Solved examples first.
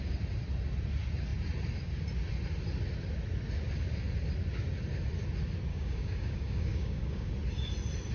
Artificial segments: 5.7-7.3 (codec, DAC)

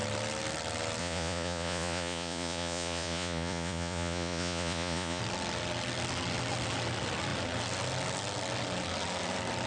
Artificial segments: 1.0-5.2 (vocoder, Vocos)

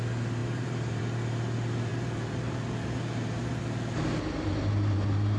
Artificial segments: 0.4-1.0 (vocoder, BigVGAN v2); 1.9-3.6

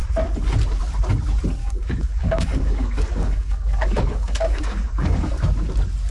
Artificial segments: 1.6-5.3 (codec, DAC)

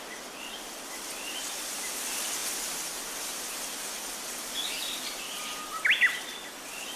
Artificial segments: none

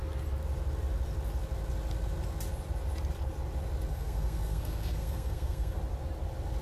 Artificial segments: 3.9-5.8 (codec, SNAC)